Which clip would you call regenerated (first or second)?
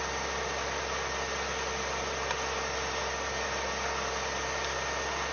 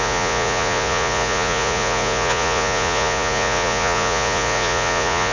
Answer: second